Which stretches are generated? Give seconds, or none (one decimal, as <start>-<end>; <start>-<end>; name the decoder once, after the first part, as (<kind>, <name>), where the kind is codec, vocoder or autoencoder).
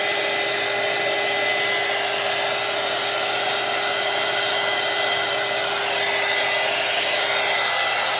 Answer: none